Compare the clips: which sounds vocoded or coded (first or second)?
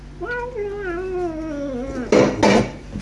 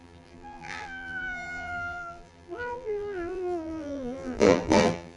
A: second